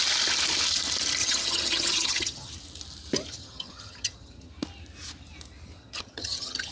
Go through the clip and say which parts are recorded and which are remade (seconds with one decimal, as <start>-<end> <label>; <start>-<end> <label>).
0.0-1.2 recorded; 1.2-2.5 remade; 2.5-3.3 recorded; 3.3-4.5 remade; 4.5-5.8 recorded; 5.8-6.7 remade